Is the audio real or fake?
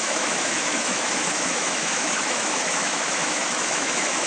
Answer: fake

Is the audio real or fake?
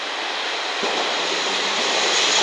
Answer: real